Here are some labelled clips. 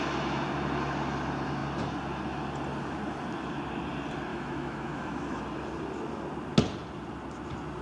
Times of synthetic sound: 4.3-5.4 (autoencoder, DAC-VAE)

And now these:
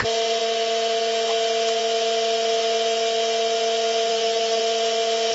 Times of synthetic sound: 4.1-4.6 (autoencoder, DAC-VAE)

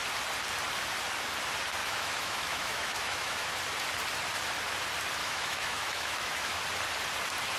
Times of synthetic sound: 1.8-3.5 (autoencoder, DAC-VAE); 5.2-6.6

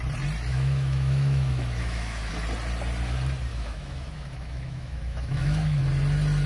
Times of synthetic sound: 0.5-2.3 (autoencoder, DAC-VAE); 3.5-5.8

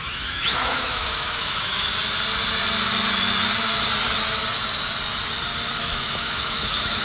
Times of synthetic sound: 0.0-1.9 (autoencoder, DAC-VAE); 5.8-7.0

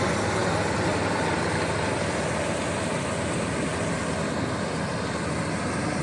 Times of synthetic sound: none

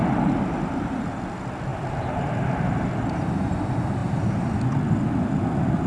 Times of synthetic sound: none